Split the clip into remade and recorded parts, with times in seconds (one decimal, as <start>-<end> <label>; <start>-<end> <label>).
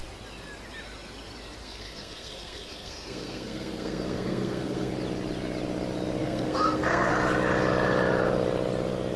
0.0-1.6 recorded; 1.6-4.9 remade; 4.9-6.2 recorded; 6.2-7.1 remade; 7.1-9.2 recorded